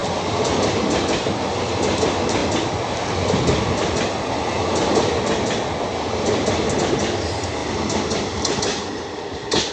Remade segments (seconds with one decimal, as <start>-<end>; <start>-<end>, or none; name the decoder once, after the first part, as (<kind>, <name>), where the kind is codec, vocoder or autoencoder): none